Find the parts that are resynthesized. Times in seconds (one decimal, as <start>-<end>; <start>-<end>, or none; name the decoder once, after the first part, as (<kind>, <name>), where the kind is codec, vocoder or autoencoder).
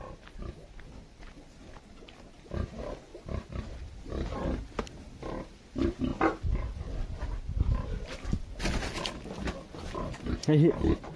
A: none